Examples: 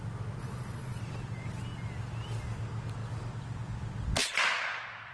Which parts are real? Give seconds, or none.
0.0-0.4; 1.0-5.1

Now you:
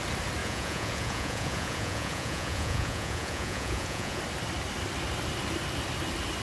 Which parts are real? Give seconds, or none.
0.0-0.4; 4.2-6.4